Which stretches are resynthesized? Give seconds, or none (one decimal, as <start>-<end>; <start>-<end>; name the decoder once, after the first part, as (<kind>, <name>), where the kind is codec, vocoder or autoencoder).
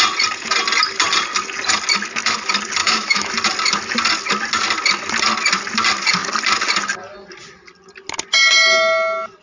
2.8-3.3 (autoencoder, DAC-VAE)